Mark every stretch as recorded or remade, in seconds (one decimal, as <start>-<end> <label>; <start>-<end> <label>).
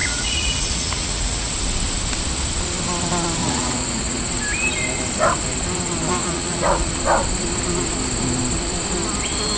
0.0-1.5 remade; 1.5-3.4 recorded; 3.4-4.2 remade; 4.2-6.2 recorded; 6.2-6.9 remade; 6.9-9.6 recorded